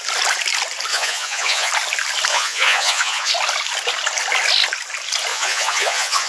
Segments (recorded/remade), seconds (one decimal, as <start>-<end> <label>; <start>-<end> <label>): 0.0-0.9 recorded; 0.9-1.7 remade; 1.7-2.3 recorded; 2.3-3.3 remade; 3.3-5.3 recorded; 5.3-6.3 remade